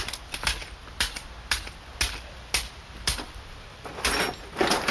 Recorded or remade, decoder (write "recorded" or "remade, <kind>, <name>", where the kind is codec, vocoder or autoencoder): recorded